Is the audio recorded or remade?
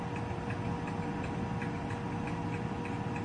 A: recorded